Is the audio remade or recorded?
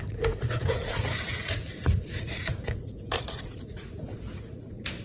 remade